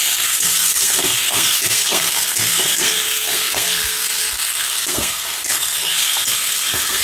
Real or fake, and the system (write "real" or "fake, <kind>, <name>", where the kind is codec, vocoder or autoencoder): fake, codec, SNAC